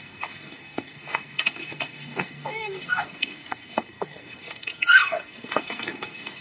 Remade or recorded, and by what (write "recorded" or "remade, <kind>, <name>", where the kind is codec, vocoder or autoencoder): remade, codec, SNAC